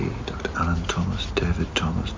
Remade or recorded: recorded